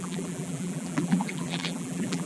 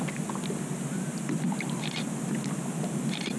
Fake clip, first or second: first